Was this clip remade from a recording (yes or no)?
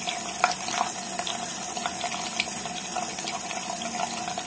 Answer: no